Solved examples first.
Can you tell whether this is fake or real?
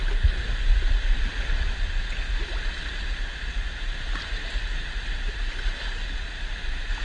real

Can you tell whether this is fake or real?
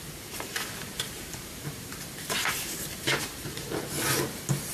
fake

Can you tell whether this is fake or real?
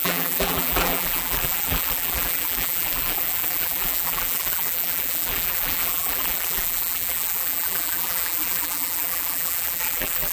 fake